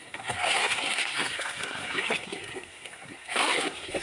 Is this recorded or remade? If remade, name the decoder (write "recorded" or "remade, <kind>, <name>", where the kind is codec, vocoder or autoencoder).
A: remade, codec, SNAC